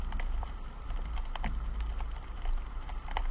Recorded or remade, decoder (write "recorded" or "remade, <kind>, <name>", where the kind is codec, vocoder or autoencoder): recorded